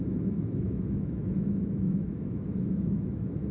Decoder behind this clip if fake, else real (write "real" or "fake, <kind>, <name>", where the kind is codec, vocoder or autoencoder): fake, autoencoder, DAC-VAE